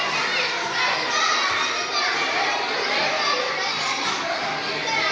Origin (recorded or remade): recorded